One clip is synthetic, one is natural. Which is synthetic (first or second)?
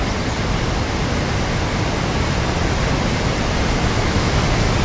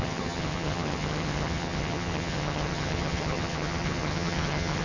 second